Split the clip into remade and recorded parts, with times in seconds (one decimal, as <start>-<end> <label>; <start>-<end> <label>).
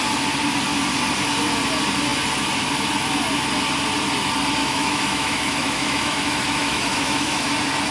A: 0.0-4.6 recorded; 4.6-7.5 remade; 7.5-7.9 recorded